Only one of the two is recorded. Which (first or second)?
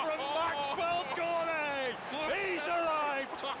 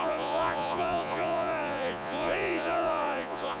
first